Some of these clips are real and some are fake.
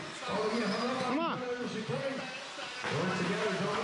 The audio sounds real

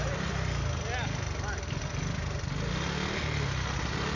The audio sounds real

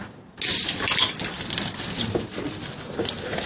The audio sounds real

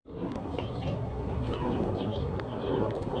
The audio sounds fake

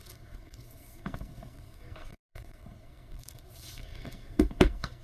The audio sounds fake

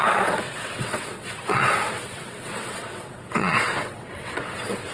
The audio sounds fake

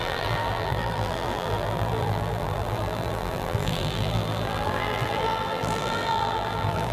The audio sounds fake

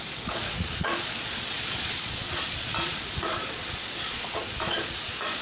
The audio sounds fake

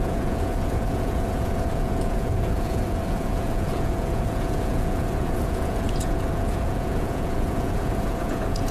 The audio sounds fake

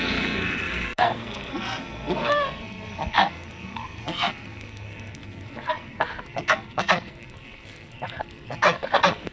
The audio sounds fake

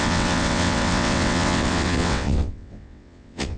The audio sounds fake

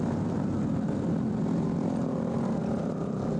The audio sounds real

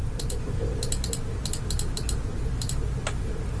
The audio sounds real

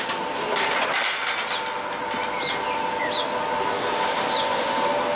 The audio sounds real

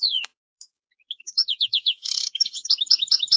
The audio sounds fake